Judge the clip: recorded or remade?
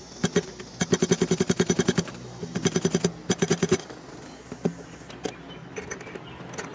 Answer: recorded